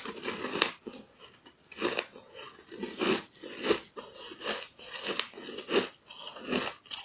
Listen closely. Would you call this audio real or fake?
real